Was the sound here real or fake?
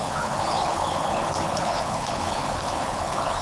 fake